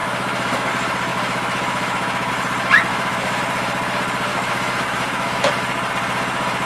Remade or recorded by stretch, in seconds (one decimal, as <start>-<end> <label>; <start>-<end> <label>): 0.0-0.7 remade; 0.7-1.1 recorded; 1.1-2.3 remade; 2.3-2.9 recorded; 2.9-3.4 remade; 3.4-4.3 recorded; 4.3-5.5 remade; 5.5-6.7 recorded

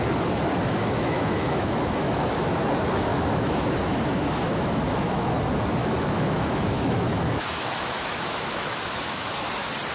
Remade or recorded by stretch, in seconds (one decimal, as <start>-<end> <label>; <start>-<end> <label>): 0.0-0.5 recorded; 0.5-2.3 remade; 2.3-3.1 recorded; 3.1-5.3 remade; 5.3-5.8 recorded; 5.8-9.5 remade; 9.5-9.9 recorded